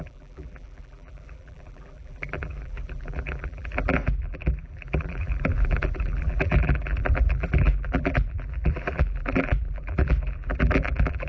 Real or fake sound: fake